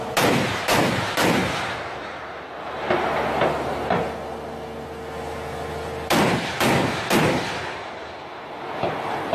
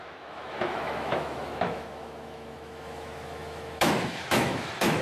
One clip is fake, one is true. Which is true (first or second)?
first